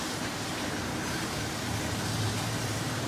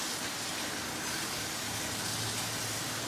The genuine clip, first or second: second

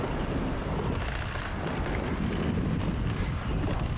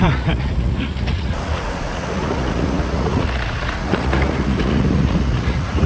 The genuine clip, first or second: first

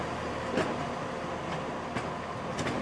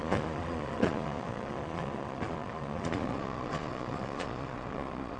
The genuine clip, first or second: first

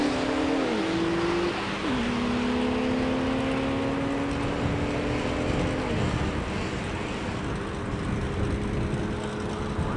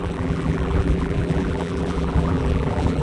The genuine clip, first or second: first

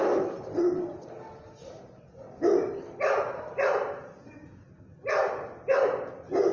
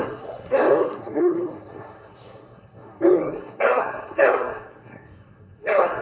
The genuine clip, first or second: first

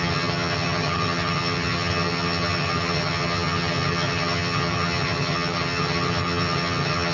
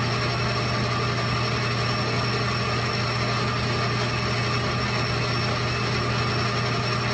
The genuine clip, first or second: second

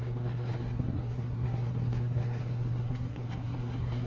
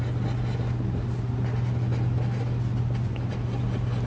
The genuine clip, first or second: second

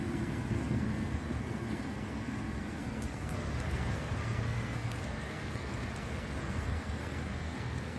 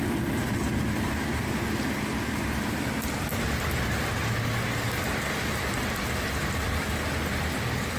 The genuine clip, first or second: second